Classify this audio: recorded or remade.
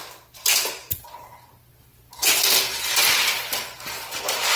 recorded